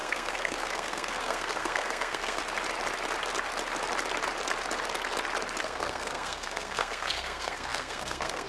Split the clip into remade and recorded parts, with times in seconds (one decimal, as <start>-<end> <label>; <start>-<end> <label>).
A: 0.0-2.4 remade; 2.4-5.6 recorded; 5.6-8.5 remade

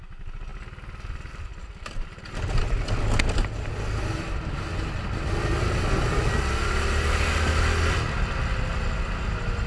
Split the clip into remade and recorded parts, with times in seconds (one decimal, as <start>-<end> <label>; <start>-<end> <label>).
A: 0.0-9.7 recorded

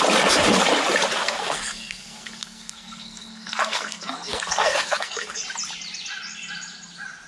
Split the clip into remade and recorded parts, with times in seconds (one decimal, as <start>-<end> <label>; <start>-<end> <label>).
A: 0.0-1.2 recorded; 1.2-5.4 remade; 5.4-7.3 recorded

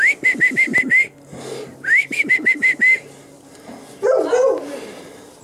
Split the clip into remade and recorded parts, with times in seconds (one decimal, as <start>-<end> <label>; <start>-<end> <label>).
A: 0.0-5.4 recorded

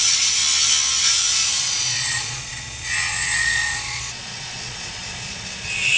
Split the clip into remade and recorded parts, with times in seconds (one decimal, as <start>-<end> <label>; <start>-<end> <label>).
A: 0.0-0.4 remade; 0.4-1.0 recorded; 1.0-6.0 remade